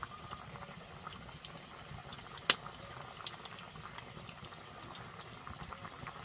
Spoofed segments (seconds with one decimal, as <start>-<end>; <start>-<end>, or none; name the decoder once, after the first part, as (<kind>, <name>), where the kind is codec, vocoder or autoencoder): none